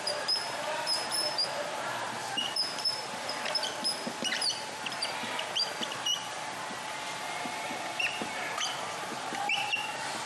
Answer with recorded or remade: remade